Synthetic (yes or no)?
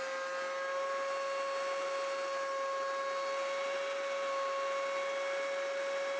no